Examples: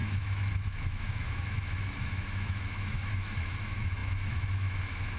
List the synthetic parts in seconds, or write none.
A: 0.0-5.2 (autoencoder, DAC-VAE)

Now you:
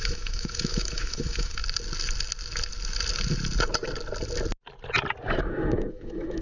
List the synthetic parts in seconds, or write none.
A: 0.0-1.6 (autoencoder, DAC-VAE); 5.4-6.4

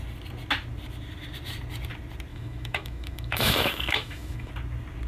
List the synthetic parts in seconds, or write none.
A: 2.3-4.5 (autoencoder, DAC-VAE)